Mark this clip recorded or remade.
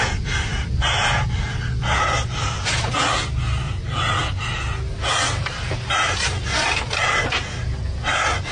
recorded